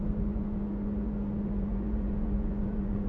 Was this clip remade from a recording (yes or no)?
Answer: yes